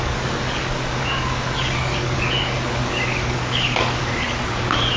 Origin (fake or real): fake